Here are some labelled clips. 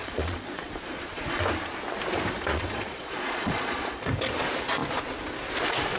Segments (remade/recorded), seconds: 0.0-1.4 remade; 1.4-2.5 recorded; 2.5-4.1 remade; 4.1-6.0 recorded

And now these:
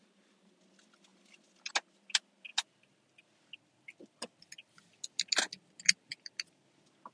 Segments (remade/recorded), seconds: 0.0-7.1 recorded

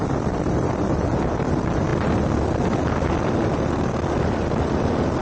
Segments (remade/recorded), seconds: 0.0-5.2 recorded